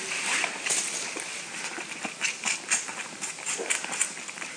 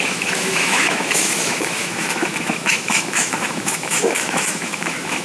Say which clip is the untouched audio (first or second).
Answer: first